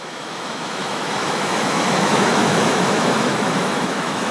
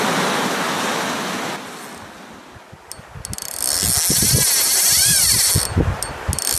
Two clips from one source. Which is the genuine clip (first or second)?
second